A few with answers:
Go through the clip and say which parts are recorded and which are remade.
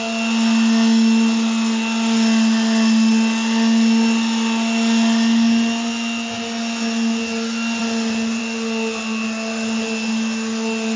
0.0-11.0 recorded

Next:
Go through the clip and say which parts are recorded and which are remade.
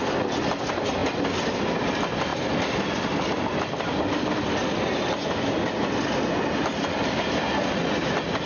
0.0-8.5 recorded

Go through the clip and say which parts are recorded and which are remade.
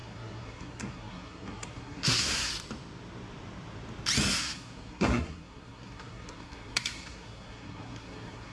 0.0-2.5 remade; 2.5-4.3 recorded; 4.3-8.5 remade